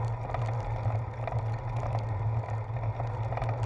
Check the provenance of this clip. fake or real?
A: real